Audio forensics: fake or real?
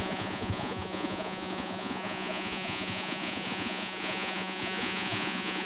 fake